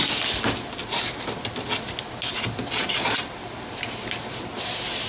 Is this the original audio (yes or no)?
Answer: yes